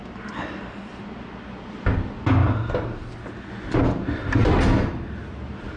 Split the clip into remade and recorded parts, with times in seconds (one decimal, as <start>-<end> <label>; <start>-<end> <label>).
0.0-2.4 recorded; 2.4-3.5 remade; 3.5-5.8 recorded